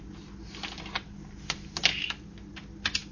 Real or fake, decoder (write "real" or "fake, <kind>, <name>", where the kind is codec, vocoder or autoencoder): real